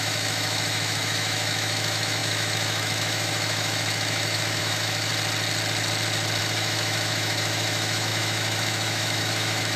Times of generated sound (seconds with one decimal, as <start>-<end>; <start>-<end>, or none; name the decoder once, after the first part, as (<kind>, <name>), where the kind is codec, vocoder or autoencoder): 0.0-5.1 (autoencoder, DAC-VAE); 6.4-9.8